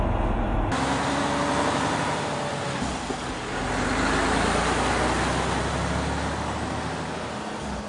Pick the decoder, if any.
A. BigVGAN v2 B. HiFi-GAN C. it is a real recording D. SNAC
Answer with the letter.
C